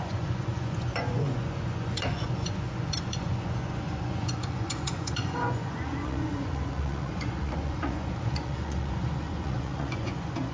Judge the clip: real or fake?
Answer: fake